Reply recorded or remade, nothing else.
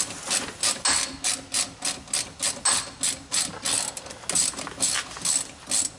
recorded